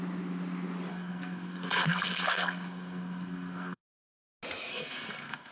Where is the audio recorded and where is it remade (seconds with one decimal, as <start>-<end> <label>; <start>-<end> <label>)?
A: 0.0-0.9 recorded; 0.9-4.2 remade; 4.2-4.7 recorded; 4.7-5.5 remade